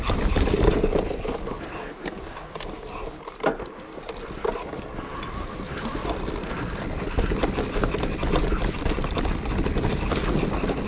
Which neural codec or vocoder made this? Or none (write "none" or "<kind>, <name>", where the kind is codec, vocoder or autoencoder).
none